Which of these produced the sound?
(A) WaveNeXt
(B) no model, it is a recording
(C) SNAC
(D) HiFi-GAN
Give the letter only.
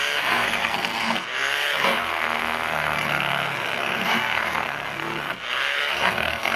C